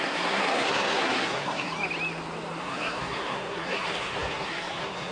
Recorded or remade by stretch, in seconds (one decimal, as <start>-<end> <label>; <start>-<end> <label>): 0.0-1.7 remade; 1.7-2.6 recorded; 2.6-5.1 remade